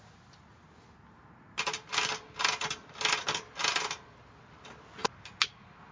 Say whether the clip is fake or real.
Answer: real